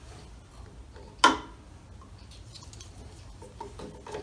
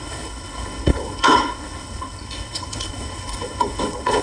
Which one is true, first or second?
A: first